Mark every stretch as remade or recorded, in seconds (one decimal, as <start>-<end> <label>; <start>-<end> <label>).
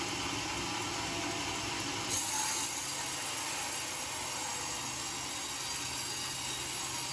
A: 0.0-7.1 recorded